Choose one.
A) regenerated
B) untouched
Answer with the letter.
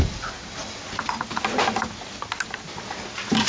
B